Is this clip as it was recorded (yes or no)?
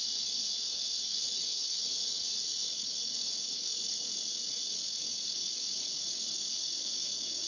no